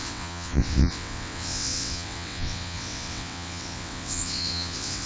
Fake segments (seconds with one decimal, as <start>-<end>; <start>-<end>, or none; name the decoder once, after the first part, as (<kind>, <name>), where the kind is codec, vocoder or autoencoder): 0.0-5.1 (vocoder, WaveNeXt)